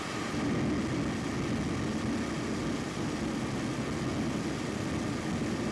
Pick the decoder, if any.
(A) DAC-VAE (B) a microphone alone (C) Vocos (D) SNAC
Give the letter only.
B